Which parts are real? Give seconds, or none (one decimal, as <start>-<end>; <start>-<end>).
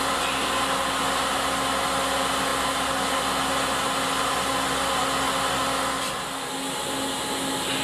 0.0-7.8